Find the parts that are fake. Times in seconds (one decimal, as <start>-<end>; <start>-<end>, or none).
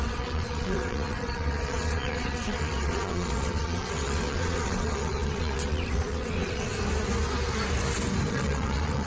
0.0-6.7; 8.3-9.1